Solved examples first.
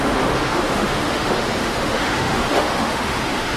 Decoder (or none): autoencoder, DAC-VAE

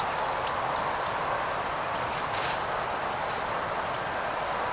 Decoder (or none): none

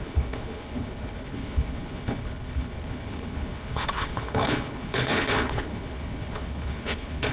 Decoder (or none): codec, HILCodec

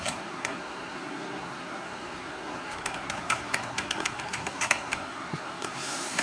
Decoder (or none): codec, SNAC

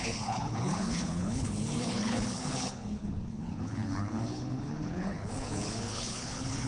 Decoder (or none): codec, HILCodec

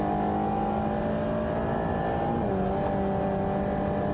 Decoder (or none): none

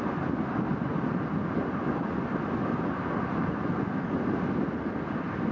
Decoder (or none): none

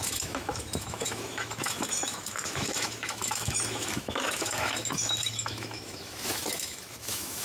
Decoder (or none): autoencoder, DAC-VAE